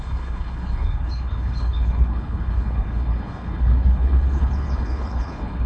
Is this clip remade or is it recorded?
remade